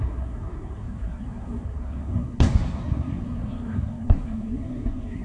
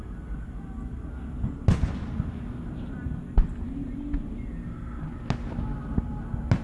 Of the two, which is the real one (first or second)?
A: second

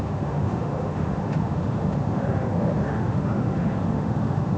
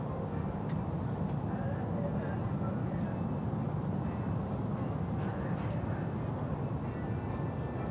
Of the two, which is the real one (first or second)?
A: second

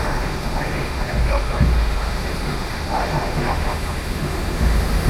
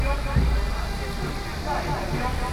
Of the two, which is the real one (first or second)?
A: second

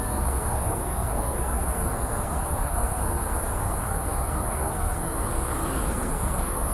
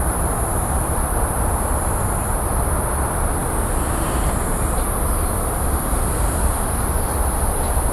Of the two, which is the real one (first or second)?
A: second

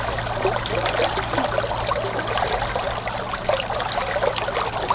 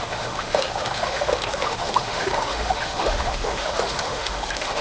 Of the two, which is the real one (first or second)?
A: first